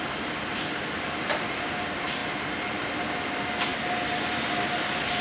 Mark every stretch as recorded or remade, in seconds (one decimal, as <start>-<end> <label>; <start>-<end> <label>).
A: 0.0-5.2 recorded